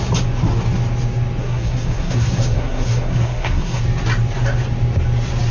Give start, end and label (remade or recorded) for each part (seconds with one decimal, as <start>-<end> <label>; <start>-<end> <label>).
0.0-1.4 recorded; 1.4-3.8 remade; 3.8-5.5 recorded